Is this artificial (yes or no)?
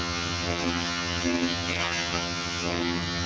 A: yes